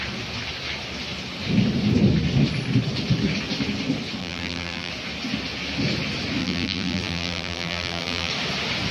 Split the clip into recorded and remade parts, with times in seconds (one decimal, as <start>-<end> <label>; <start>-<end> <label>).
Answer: 0.0-4.2 recorded; 4.2-4.9 remade; 4.9-6.4 recorded; 6.4-8.3 remade; 8.3-8.9 recorded